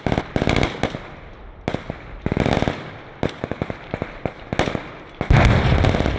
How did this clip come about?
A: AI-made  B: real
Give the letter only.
B